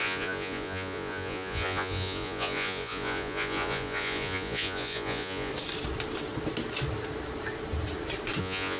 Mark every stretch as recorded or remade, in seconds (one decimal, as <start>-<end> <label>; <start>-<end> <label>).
0.0-5.5 remade; 5.5-8.4 recorded; 8.4-8.8 remade

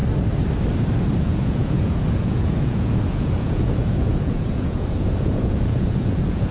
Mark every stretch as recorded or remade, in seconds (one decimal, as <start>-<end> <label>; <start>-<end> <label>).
0.0-1.2 recorded; 1.2-6.5 remade

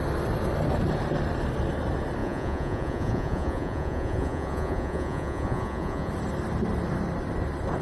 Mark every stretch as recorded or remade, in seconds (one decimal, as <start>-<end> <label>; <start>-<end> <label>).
0.0-2.2 recorded; 2.2-6.1 remade; 6.1-7.8 recorded

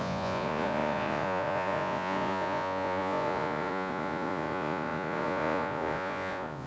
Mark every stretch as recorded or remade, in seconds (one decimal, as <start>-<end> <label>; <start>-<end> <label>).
0.0-6.7 remade

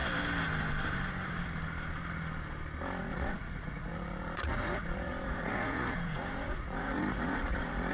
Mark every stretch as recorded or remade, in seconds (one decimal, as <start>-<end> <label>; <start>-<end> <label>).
0.0-3.0 recorded; 3.0-7.9 remade

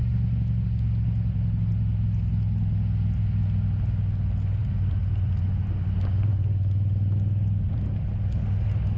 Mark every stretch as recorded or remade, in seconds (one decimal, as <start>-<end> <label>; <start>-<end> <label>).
0.0-9.0 recorded

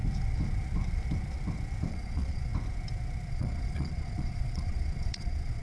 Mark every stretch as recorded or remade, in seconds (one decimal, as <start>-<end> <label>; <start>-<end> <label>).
0.0-1.9 recorded; 1.9-2.5 remade; 2.5-3.3 recorded; 3.3-5.6 remade

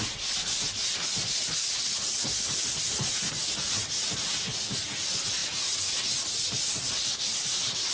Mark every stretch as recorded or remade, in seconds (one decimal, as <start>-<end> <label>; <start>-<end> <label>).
0.0-7.9 recorded